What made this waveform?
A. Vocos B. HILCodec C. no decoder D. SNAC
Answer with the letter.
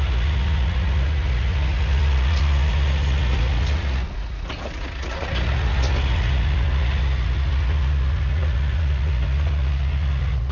A